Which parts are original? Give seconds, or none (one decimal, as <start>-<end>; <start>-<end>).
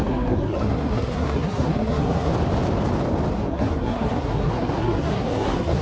2.3-3.3